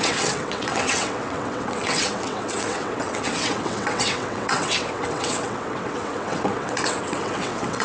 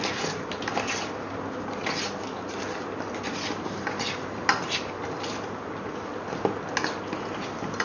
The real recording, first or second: second